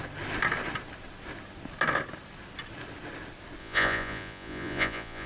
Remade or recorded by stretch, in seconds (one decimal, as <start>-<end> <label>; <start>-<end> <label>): 0.0-3.6 recorded; 3.6-5.3 remade